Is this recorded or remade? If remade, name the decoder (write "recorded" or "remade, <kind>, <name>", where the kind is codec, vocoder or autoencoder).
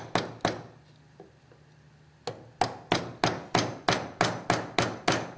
recorded